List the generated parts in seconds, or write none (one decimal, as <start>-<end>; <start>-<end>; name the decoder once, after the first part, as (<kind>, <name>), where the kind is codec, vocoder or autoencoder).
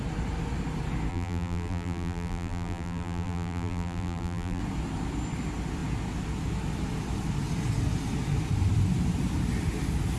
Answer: 1.1-4.6 (vocoder, BigVGAN v2)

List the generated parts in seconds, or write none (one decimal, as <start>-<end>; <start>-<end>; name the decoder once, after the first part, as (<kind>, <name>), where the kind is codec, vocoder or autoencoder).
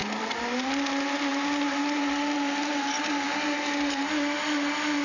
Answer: none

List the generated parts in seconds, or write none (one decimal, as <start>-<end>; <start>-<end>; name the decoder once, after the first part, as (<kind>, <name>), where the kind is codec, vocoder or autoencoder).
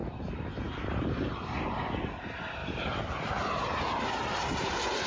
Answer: 0.0-1.3 (vocoder, BigVGAN v2); 2.6-5.1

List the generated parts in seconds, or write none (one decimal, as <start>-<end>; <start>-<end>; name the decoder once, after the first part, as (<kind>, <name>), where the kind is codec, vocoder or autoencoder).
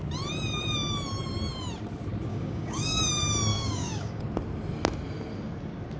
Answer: 2.3-3.0 (codec, DAC); 3.5-4.2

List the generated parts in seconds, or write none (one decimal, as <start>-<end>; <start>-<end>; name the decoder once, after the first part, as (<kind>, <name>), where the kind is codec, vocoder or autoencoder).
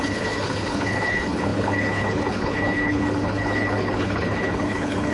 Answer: 0.0-5.1 (codec, HILCodec)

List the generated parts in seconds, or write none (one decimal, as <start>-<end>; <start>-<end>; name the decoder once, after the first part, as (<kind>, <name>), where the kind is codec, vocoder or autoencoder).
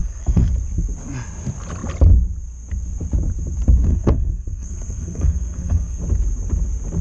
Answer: 0.0-0.5 (codec, SNAC); 3.9-6.0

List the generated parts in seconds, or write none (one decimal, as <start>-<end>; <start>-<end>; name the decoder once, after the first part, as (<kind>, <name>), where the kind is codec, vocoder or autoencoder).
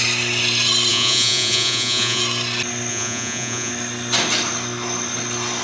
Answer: 0.9-2.2 (vocoder, Vocos); 2.9-3.7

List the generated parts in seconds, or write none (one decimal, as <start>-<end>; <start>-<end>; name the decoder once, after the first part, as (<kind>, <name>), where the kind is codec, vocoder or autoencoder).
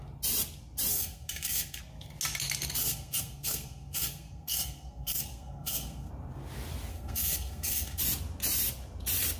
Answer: 0.9-1.8 (codec, SNAC); 2.8-6.1; 6.9-8.0